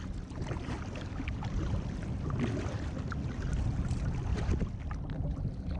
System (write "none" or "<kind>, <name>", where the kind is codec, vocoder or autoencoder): none